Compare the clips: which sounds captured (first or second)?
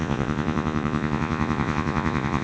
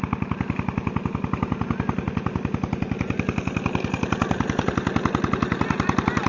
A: second